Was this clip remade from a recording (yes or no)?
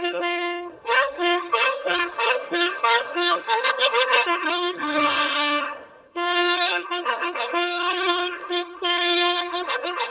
yes